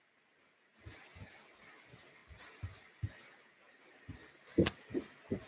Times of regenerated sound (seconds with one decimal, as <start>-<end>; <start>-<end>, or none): 0.7-1.3; 2.2-3.1; 4.2-4.7